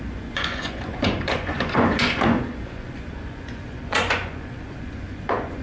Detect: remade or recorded remade